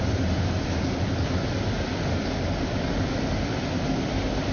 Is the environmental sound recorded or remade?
recorded